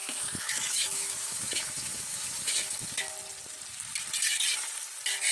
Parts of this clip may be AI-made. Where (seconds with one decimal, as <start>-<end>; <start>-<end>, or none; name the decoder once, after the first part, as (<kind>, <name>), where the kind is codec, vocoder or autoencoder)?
0.0-3.1 (autoencoder, DAC-VAE)